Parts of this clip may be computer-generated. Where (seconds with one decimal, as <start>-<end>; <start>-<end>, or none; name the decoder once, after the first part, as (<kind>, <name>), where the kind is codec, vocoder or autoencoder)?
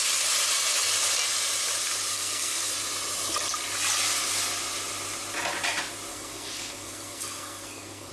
2.1-2.7 (codec, SNAC); 6.1-8.1